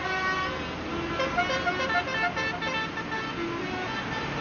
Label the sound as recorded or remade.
recorded